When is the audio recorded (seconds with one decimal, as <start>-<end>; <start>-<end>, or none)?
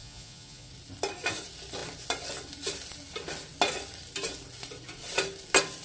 0.7-5.8